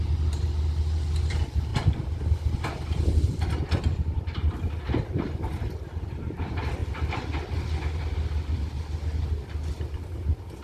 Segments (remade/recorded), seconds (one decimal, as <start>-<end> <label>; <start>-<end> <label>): 0.0-10.6 recorded